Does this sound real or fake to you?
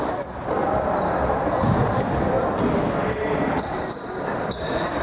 real